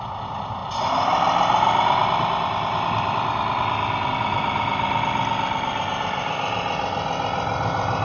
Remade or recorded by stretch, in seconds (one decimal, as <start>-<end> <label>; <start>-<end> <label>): 0.0-8.0 recorded